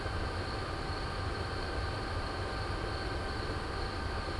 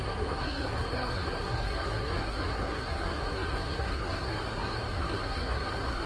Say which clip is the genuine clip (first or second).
first